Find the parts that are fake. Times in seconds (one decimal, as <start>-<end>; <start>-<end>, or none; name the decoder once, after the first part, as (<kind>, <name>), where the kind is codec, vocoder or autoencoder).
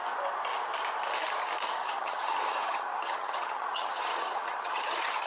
1.8-5.3 (vocoder, HiFi-GAN)